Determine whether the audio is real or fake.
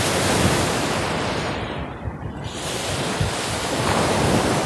real